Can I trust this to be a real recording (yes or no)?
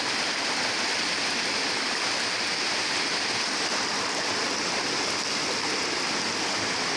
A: yes